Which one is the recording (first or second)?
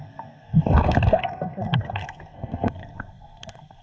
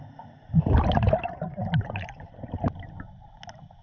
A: second